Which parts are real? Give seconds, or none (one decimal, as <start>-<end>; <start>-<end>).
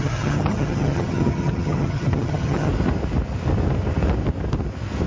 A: 2.7-5.1